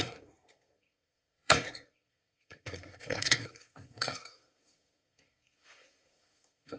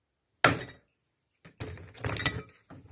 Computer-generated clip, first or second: first